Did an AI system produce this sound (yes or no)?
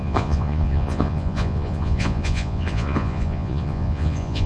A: yes